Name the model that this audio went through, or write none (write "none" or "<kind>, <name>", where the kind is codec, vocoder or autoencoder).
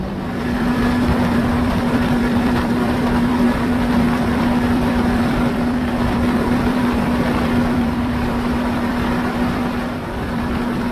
vocoder, BigVGAN v2